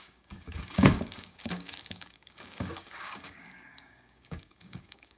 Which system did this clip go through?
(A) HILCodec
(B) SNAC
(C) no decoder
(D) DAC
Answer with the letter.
D